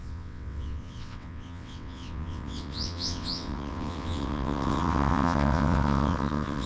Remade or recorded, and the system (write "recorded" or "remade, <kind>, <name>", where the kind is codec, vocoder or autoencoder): remade, vocoder, WaveNeXt